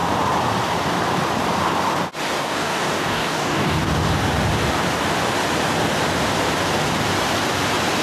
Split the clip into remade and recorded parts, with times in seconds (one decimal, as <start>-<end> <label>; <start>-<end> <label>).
0.0-2.4 recorded; 2.4-4.1 remade; 4.1-8.0 recorded

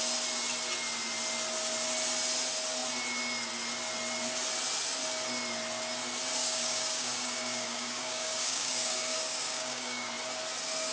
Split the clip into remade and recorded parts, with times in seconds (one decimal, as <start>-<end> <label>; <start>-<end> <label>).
0.0-6.4 recorded; 6.4-10.1 remade; 10.1-10.9 recorded

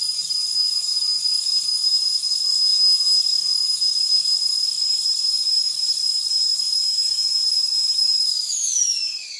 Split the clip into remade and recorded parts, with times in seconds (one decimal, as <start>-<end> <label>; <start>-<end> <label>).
0.0-9.4 remade